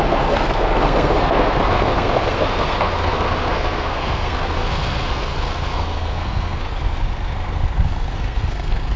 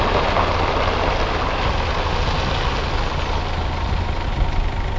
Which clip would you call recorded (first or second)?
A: second